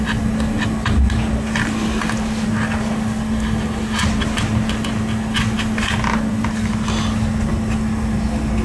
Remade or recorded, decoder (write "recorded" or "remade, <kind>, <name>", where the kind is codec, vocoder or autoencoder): recorded